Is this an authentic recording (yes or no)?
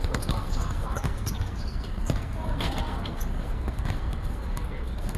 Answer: no